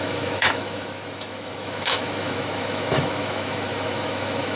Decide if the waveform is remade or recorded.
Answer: remade